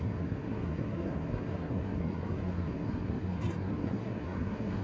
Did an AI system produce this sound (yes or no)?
yes